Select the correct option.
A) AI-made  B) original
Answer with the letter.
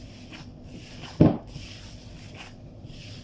B